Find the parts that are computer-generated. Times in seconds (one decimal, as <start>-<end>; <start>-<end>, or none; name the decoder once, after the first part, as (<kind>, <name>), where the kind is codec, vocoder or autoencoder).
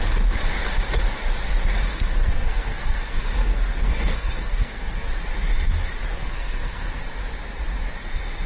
2.2-5.1 (codec, SNAC); 6.0-7.0